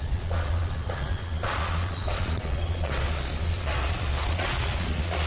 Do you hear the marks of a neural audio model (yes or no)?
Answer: yes